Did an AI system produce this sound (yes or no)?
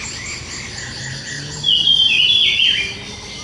no